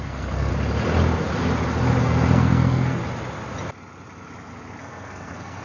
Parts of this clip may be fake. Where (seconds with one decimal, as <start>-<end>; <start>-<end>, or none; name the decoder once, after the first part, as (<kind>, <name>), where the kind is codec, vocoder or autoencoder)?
0.0-0.5 (codec, SNAC); 2.0-3.0; 4.8-5.6